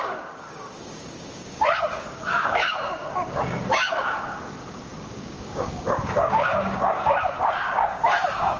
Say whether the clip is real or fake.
fake